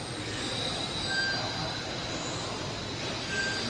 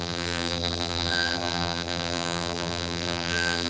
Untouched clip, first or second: first